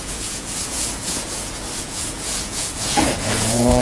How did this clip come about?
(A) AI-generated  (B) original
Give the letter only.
A